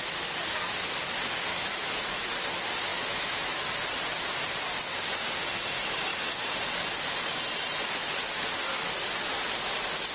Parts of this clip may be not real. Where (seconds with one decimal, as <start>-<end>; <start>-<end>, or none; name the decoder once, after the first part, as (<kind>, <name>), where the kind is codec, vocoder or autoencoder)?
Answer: 1.5-2.3 (autoencoder, DAC-VAE); 2.9-3.6